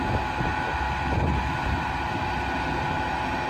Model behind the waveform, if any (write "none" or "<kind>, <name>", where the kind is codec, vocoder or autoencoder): none